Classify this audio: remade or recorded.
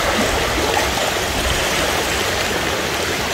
recorded